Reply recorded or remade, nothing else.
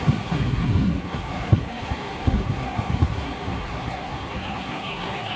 remade